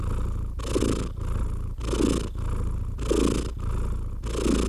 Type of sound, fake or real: real